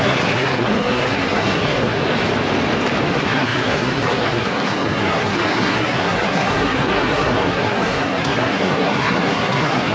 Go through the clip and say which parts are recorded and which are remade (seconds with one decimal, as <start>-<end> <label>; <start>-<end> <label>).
0.0-2.0 remade; 2.0-3.1 recorded; 3.1-9.9 remade